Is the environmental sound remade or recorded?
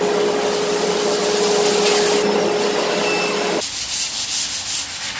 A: recorded